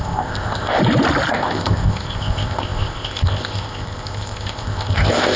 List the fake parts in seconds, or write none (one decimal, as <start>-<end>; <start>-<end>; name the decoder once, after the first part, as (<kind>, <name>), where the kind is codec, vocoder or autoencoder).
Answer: 0.0-0.8 (codec, ZipCodec); 1.3-5.4